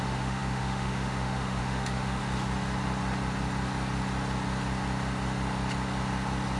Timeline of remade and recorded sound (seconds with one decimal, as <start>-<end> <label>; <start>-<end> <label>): 0.0-2.2 remade; 2.2-6.6 recorded